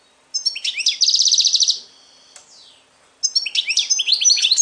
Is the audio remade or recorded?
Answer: recorded